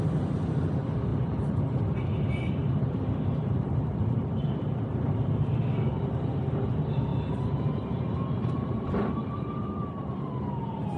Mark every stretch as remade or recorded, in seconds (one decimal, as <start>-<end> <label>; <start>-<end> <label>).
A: 0.0-1.1 recorded; 1.1-1.8 remade; 1.8-2.6 recorded; 2.6-5.6 remade; 5.6-7.1 recorded; 7.1-10.3 remade; 10.3-11.0 recorded